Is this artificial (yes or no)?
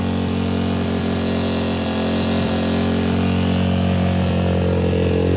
no